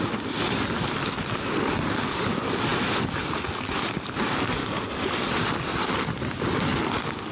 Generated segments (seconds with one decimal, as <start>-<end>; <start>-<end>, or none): none